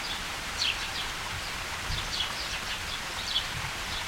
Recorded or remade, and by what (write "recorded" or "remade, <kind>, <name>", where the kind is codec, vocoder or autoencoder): remade, vocoder, BigVGAN v2